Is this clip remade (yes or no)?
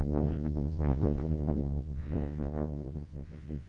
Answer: yes